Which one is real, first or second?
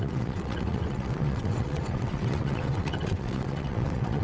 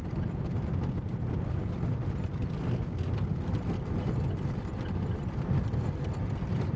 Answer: second